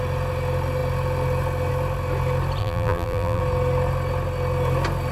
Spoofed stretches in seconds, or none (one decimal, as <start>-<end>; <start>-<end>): 2.6-3.4